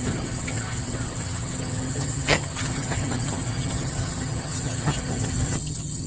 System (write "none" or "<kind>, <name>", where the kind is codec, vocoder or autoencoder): vocoder, HiFi-GAN